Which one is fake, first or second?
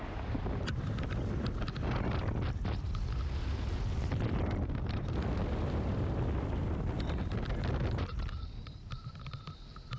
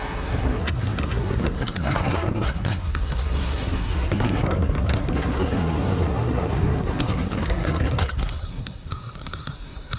second